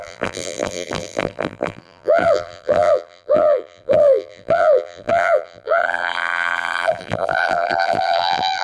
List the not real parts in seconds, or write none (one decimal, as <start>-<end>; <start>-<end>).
0.0-8.6

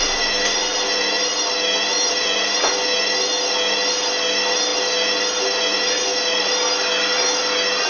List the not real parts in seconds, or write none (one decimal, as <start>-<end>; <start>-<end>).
none

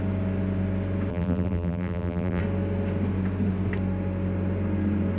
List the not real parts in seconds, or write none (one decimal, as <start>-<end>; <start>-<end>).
1.1-2.4

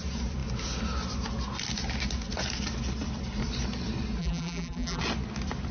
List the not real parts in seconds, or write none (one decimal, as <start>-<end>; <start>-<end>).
4.2-5.0